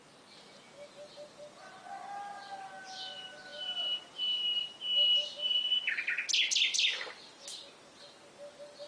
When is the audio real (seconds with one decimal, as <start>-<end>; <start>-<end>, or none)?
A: 0.0-8.9